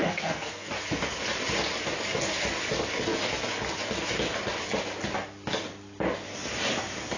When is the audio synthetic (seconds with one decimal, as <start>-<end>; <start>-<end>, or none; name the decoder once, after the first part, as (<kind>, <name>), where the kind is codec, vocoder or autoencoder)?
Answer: 0.0-0.7 (codec, SNAC)